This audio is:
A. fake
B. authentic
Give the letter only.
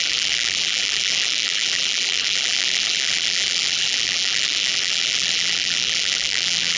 A